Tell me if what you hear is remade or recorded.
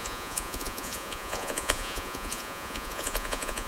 remade